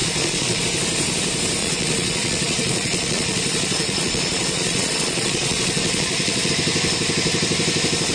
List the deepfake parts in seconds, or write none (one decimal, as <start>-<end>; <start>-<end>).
0.0-0.6; 1.6-6.5